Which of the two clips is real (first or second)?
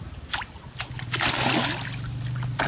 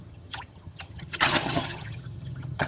first